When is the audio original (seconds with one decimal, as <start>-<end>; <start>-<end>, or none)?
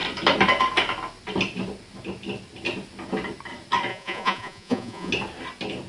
0.0-3.9; 5.1-5.9